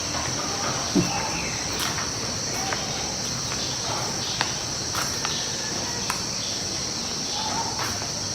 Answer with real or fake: real